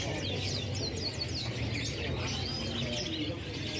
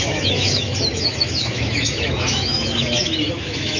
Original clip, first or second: first